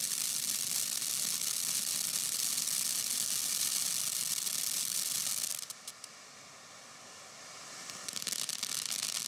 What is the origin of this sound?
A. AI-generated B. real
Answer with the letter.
B